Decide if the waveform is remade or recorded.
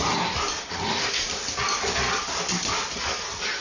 recorded